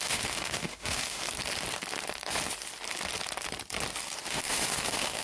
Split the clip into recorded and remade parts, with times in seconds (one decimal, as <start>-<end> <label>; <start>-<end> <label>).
0.0-1.2 remade; 1.2-4.3 recorded; 4.3-5.2 remade